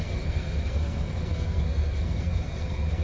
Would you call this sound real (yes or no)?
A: no